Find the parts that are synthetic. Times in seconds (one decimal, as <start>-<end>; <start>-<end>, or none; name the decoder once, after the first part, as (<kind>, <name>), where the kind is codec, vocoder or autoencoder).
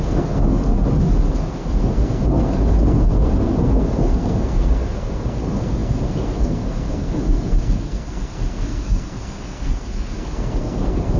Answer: 0.0-0.6 (codec, SNAC); 1.3-11.2